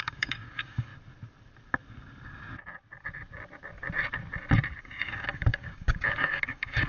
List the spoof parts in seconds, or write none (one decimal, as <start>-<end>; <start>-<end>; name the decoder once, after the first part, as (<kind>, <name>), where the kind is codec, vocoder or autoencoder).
0.0-0.9 (codec, DAC); 4.8-6.9